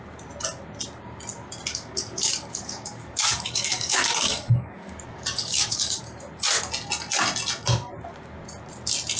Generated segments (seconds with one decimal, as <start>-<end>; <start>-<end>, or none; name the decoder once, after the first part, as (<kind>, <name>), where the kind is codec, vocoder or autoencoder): 1.7-6.0 (codec, DAC)